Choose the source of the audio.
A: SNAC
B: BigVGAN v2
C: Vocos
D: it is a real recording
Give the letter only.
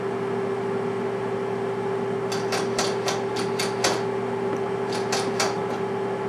D